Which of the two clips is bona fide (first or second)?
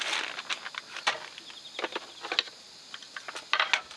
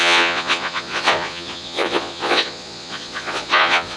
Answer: first